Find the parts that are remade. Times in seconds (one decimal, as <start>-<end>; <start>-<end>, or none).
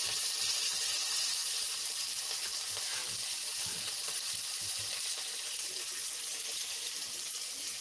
none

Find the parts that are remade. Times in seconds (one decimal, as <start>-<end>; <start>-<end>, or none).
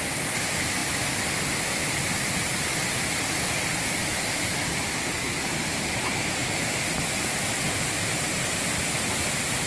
none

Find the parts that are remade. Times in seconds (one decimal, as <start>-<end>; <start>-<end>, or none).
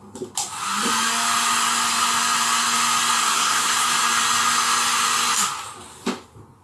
3.2-3.9